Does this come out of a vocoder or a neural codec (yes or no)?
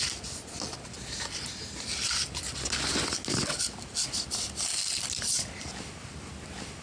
no